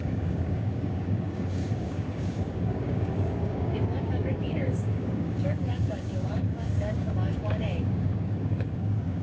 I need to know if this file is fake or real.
fake